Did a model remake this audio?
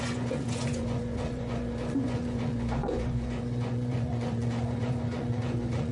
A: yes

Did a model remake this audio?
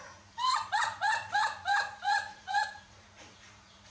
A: yes